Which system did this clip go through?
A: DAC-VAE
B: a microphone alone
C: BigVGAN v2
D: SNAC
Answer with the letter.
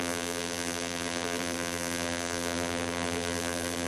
C